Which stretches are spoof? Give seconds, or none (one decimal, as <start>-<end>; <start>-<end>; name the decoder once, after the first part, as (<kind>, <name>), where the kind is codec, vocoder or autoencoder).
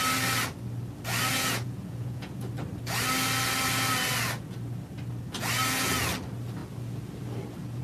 1.3-2.5 (vocoder, Vocos)